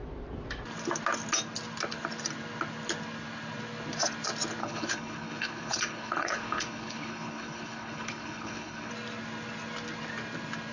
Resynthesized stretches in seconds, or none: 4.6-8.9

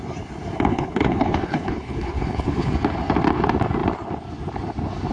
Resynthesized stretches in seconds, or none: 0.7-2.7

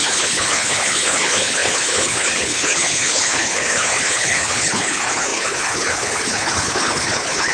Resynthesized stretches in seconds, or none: 0.0-7.5